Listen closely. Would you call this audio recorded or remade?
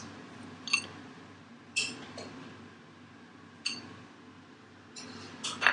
recorded